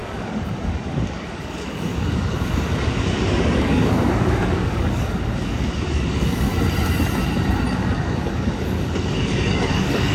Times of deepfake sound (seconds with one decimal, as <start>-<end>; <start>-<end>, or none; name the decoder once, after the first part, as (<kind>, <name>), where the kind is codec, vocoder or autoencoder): 0.0-6.5 (codec, DAC); 7.7-10.1